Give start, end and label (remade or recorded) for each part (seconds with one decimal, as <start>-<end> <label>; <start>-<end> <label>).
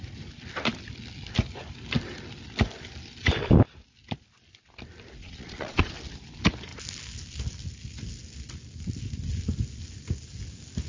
0.0-5.2 recorded; 5.2-5.9 remade; 5.9-10.9 recorded